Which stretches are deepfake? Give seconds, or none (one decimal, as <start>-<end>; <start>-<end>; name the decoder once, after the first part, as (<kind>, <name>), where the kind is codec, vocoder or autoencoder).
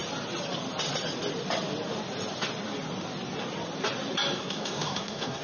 4.4-5.4 (codec, SNAC)